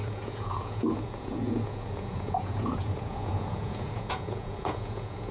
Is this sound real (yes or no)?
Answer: no